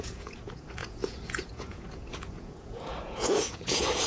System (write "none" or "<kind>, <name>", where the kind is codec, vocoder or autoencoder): vocoder, Vocos